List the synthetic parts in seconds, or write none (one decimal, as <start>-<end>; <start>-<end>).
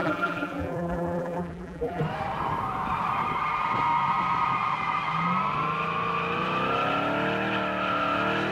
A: 0.0-2.0